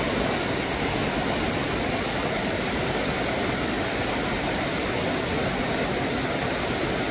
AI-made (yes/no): no